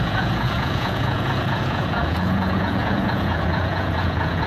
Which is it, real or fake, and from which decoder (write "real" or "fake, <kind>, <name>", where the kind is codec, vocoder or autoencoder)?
fake, vocoder, Vocos